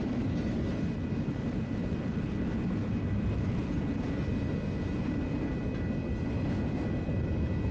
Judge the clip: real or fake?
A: real